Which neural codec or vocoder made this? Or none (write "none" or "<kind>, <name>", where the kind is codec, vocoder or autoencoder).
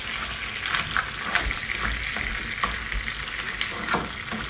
none